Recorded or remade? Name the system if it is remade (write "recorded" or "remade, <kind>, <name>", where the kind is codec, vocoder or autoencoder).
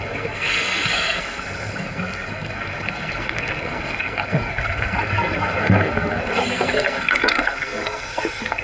remade, codec, SNAC